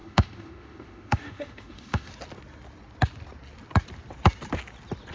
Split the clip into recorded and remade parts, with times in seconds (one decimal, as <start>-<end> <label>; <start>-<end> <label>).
0.0-2.1 remade; 2.1-5.1 recorded